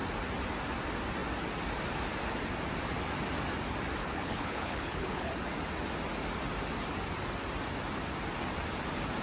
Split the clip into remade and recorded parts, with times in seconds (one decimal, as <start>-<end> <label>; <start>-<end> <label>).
0.0-4.0 recorded; 4.0-5.3 remade; 5.3-9.2 recorded